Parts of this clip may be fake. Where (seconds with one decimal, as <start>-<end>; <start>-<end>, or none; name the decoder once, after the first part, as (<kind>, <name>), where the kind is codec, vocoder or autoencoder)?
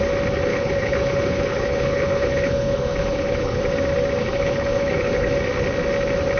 0.5-3.6 (codec, HILCodec); 4.2-5.3